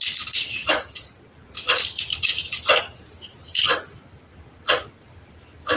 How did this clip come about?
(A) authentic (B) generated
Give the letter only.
A